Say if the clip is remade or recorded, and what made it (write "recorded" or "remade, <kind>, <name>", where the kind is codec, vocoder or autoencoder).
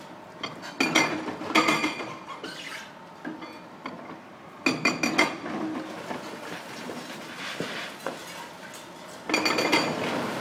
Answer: recorded